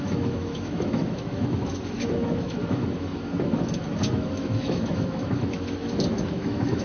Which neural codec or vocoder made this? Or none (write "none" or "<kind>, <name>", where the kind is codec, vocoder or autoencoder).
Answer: autoencoder, DAC-VAE